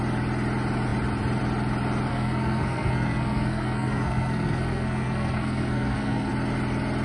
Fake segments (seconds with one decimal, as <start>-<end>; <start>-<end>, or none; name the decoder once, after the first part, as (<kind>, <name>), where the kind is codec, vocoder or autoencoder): 2.1-6.3 (codec, SNAC)